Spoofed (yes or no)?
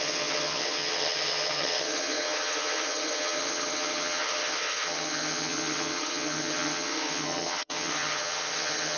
yes